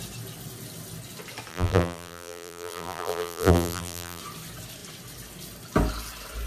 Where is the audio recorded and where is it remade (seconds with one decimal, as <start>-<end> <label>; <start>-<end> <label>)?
0.0-1.5 recorded; 1.5-4.2 remade; 4.2-6.5 recorded